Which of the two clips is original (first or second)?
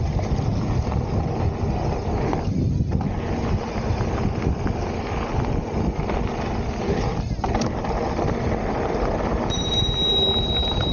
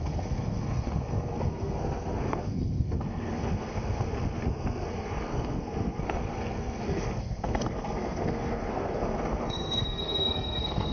first